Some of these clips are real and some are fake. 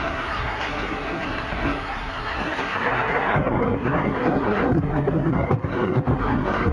fake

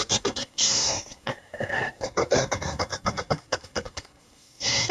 fake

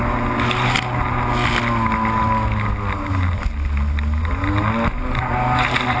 real